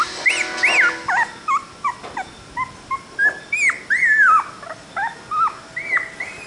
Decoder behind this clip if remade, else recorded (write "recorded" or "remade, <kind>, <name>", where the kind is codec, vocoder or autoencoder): recorded